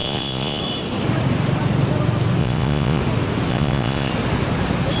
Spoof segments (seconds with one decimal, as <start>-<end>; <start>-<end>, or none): 0.0-0.6; 2.4-3.0; 3.5-4.1